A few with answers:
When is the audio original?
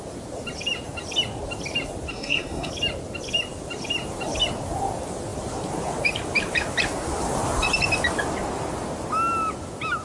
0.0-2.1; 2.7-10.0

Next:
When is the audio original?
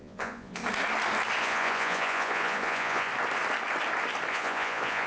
0.6-1.4; 3.1-4.3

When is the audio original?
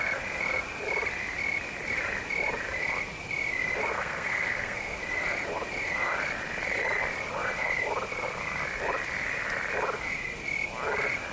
0.0-3.9; 5.0-11.3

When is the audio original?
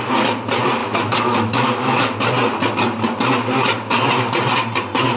0.0-0.8; 2.2-5.2